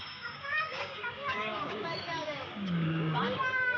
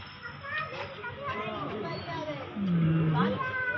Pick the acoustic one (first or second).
second